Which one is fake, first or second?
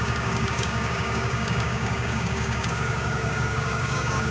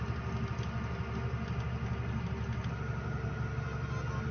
first